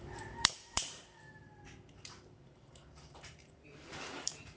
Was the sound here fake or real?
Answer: fake